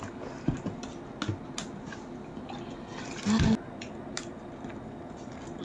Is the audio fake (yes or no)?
no